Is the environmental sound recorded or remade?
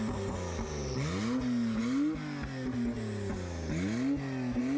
recorded